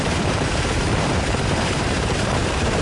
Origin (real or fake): fake